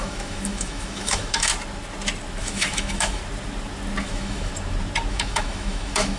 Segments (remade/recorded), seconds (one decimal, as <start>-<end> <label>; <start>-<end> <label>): 0.0-1.5 remade; 1.5-2.4 recorded; 2.4-3.2 remade; 3.2-4.0 recorded; 4.0-4.5 remade; 4.5-5.1 recorded; 5.1-6.2 remade